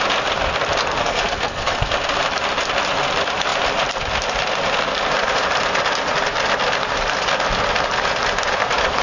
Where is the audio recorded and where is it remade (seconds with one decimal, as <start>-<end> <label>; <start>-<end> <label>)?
0.0-0.8 recorded; 0.8-1.9 remade; 1.9-9.0 recorded